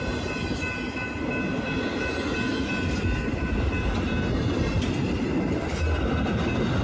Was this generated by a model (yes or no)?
no